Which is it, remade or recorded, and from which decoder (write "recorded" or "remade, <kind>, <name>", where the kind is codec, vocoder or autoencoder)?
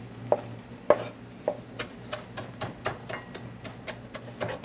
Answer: recorded